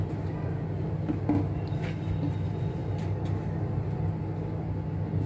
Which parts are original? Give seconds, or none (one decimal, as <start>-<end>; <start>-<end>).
0.0-5.3